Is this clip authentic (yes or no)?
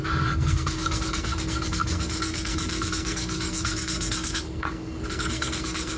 no